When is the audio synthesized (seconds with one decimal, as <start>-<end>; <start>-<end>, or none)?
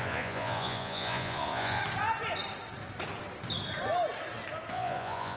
0.0-1.8; 4.7-5.4